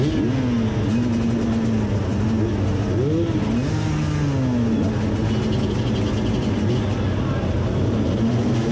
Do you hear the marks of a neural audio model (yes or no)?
no